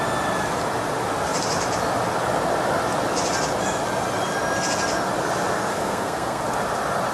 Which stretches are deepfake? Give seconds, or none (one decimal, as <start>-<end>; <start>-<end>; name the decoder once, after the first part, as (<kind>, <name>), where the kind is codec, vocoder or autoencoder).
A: 5.7-6.4 (codec, SNAC)